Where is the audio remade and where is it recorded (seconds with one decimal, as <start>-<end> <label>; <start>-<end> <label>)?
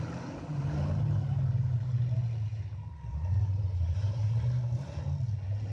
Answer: 0.0-2.5 recorded; 2.5-5.0 remade; 5.0-5.7 recorded